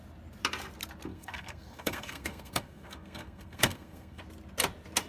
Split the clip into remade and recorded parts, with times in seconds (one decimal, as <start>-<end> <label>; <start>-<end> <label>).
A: 0.0-1.1 recorded; 1.1-4.2 remade; 4.2-5.1 recorded